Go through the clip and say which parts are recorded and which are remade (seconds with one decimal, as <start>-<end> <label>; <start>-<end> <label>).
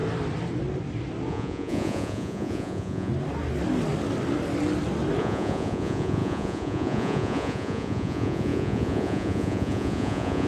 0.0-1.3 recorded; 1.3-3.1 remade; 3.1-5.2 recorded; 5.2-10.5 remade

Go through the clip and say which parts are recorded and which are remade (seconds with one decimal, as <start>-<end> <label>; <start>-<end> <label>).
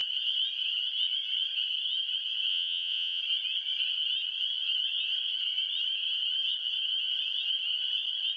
0.0-2.5 recorded; 2.5-3.2 remade; 3.2-8.4 recorded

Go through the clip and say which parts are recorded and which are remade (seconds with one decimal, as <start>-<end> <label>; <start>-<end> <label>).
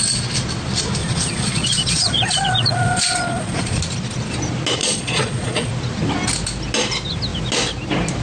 0.0-1.0 recorded; 1.0-3.8 remade; 3.8-4.8 recorded; 4.8-5.7 remade; 5.7-8.2 recorded